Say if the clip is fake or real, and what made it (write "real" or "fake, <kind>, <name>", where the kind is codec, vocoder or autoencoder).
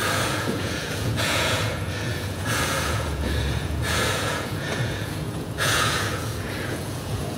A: fake, vocoder, Vocos